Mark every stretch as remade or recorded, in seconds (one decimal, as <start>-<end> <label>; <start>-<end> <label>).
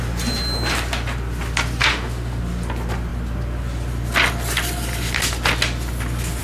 0.0-1.9 recorded; 1.9-2.4 remade; 2.4-6.4 recorded